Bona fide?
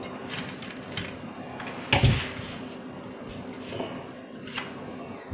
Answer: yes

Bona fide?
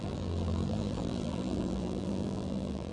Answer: no